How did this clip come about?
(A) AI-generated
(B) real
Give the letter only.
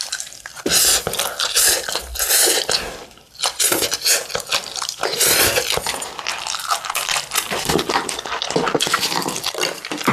A